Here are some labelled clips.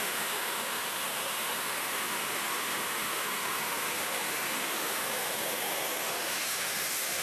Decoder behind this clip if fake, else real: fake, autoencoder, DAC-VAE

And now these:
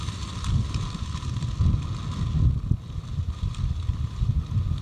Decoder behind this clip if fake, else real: real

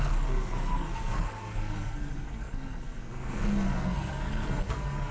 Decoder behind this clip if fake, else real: fake, codec, SNAC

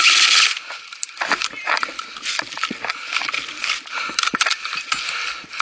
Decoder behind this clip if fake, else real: real